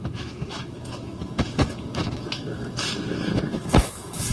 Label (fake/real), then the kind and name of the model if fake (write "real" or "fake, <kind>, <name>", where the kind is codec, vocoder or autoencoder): fake, autoencoder, DAC-VAE